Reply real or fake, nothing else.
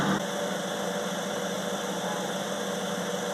real